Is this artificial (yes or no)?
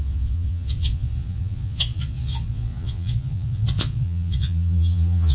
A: yes